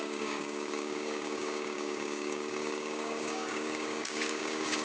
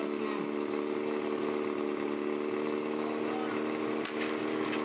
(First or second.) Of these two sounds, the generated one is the first